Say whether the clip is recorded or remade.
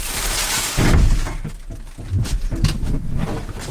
recorded